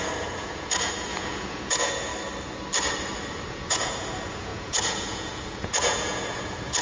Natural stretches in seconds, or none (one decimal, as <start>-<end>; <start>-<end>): 2.1-3.5